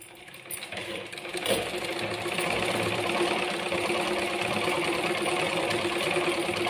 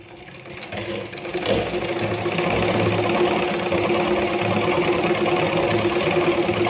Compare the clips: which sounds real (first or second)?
second